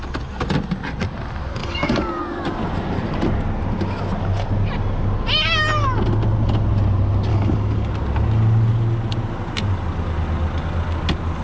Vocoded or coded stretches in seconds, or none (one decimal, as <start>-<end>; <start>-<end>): 1.6-2.2; 7.3-7.9